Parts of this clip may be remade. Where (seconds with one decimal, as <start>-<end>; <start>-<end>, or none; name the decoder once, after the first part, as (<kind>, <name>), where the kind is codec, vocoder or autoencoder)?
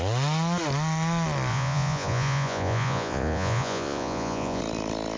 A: 1.5-4.6 (vocoder, Vocos)